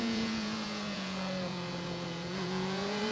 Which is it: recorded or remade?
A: remade